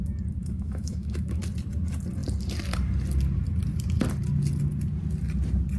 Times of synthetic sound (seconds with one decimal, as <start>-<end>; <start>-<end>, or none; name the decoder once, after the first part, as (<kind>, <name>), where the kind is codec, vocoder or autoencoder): 0.4-1.4 (autoencoder, DAC-VAE)

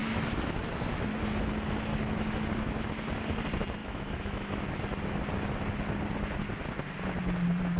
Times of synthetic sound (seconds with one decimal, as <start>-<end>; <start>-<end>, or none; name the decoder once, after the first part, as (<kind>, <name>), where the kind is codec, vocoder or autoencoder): 0.0-0.6 (autoencoder, DAC-VAE); 1.9-2.8; 3.8-4.6

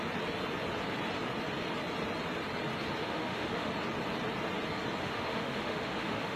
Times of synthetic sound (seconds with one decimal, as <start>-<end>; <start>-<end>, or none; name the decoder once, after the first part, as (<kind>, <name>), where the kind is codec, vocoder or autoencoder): 3.0-3.7 (autoencoder, DAC-VAE); 5.0-6.4

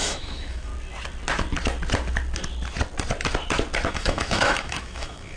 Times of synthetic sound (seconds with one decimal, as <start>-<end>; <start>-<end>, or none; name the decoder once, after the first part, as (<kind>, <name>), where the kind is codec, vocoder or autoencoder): 0.0-0.7 (autoencoder, DAC-VAE); 3.9-5.4